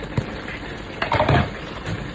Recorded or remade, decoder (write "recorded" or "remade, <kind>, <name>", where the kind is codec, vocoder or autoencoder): recorded